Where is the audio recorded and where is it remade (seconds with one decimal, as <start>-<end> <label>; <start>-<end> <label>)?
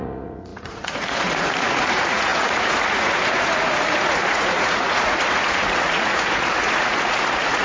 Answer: 0.0-7.6 remade